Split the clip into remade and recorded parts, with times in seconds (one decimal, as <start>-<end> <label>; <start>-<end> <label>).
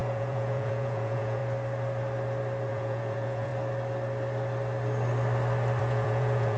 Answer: 0.0-1.4 remade; 1.4-2.7 recorded; 2.7-3.5 remade; 3.5-5.8 recorded; 5.8-6.6 remade